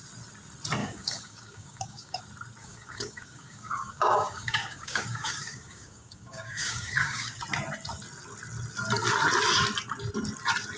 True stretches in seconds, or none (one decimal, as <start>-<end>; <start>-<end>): 0.0-0.8; 2.2-2.6; 7.4-10.8